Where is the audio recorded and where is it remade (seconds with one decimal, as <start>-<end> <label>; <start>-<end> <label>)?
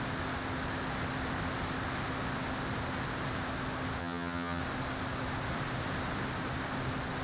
0.0-4.0 recorded; 4.0-4.6 remade; 4.6-7.2 recorded